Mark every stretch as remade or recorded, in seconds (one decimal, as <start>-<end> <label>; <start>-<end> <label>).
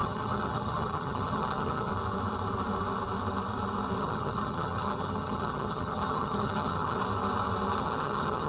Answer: 0.0-1.9 remade; 1.9-4.0 recorded; 4.0-7.0 remade; 7.0-7.8 recorded; 7.8-8.5 remade